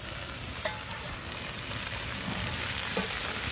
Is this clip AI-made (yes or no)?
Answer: no